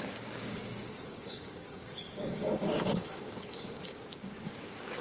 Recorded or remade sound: remade